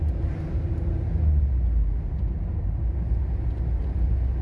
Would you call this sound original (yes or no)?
yes